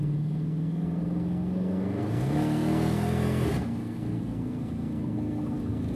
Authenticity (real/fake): fake